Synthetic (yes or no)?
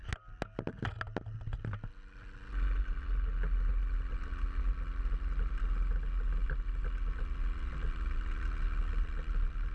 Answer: no